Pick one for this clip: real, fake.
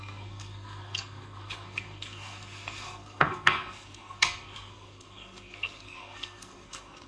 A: fake